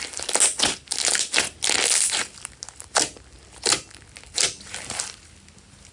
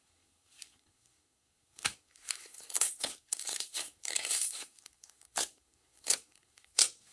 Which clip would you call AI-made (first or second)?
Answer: second